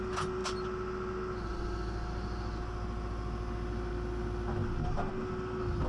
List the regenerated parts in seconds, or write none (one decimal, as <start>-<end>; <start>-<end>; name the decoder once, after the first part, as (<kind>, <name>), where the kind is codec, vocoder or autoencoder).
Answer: none